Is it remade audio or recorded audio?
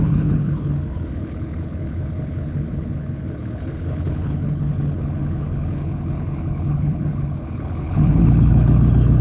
remade